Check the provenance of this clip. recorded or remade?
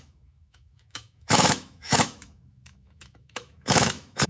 remade